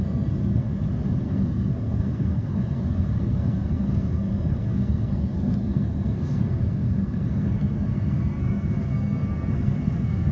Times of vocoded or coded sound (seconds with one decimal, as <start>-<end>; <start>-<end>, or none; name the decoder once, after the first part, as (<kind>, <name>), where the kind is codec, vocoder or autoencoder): 0.0-0.7 (codec, SNAC); 1.2-10.3